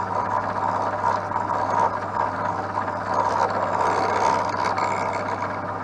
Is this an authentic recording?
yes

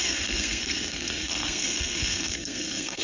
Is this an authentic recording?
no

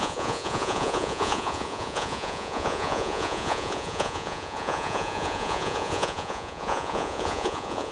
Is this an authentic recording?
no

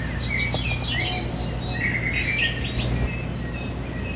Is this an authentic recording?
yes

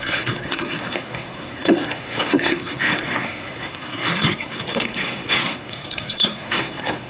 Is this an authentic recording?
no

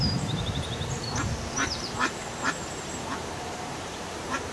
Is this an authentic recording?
no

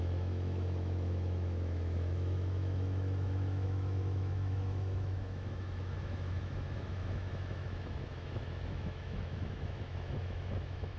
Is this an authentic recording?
no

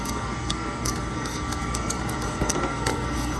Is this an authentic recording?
no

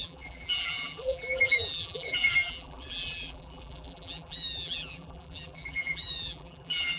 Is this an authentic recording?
no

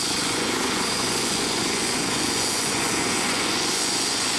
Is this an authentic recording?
no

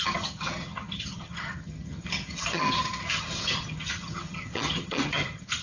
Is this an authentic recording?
no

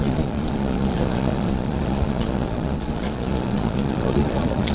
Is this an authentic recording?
no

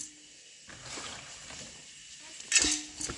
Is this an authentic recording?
yes